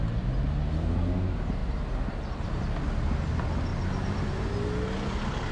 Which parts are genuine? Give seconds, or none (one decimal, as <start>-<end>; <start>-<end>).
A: 0.0-5.5